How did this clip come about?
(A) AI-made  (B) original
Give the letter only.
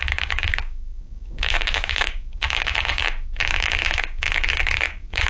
A